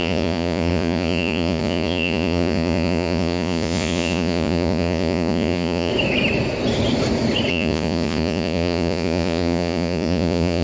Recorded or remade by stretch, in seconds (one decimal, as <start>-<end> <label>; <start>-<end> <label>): 0.0-5.9 remade; 5.9-7.5 recorded; 7.5-10.6 remade